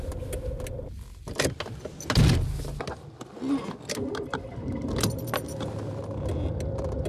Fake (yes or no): no